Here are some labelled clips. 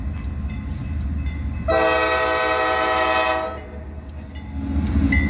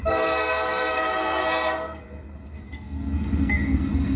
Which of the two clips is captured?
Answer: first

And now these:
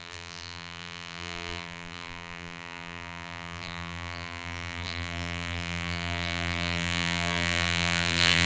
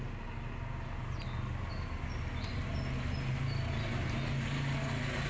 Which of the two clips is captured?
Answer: second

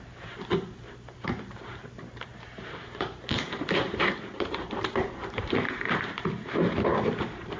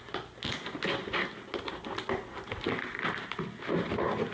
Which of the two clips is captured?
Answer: second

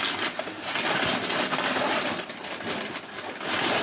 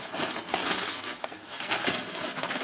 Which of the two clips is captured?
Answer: first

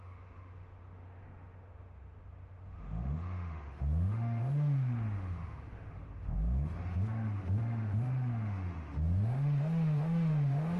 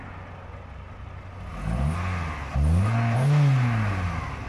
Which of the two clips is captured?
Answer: second